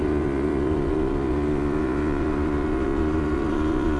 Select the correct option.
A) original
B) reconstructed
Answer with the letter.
B